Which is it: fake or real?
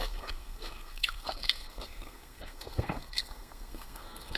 fake